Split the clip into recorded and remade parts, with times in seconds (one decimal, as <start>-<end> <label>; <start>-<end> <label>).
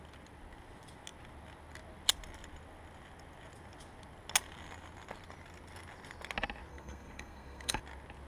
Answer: 0.0-6.7 recorded; 6.7-7.8 remade; 7.8-8.3 recorded